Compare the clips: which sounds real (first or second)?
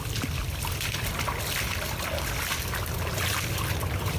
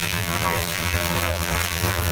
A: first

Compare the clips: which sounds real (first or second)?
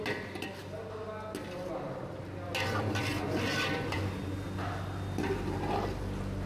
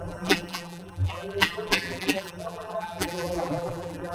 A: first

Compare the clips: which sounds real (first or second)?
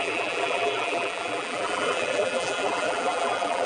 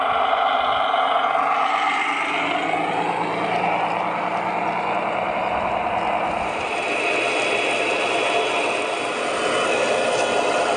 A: second